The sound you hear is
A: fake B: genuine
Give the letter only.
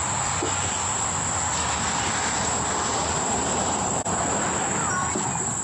B